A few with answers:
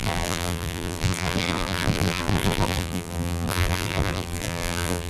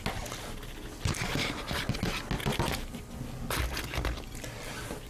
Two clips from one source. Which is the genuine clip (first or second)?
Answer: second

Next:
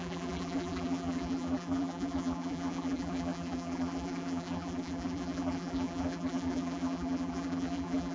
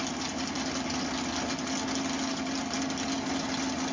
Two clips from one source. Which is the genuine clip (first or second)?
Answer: second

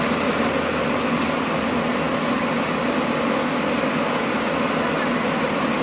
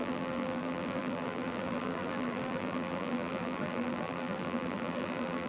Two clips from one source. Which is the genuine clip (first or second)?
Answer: first